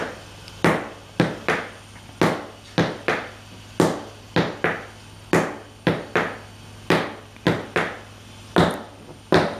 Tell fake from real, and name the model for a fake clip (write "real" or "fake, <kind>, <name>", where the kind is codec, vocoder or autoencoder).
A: real